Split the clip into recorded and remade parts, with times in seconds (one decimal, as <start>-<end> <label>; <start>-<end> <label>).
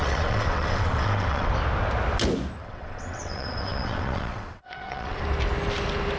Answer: 0.0-1.5 remade; 1.5-2.6 recorded; 2.6-5.2 remade; 5.2-6.2 recorded